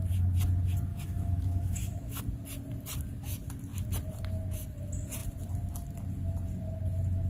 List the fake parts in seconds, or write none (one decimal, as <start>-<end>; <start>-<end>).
0.9-2.2